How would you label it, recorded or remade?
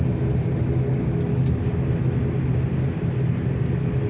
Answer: recorded